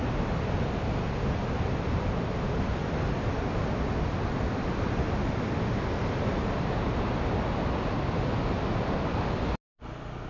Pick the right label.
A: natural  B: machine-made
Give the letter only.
A